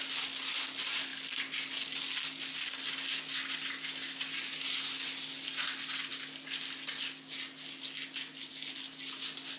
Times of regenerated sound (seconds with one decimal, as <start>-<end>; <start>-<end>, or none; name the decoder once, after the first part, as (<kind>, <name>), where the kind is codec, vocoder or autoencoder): none